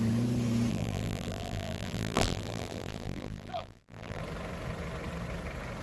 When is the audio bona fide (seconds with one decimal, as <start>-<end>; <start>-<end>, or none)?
0.0-0.7; 4.2-5.8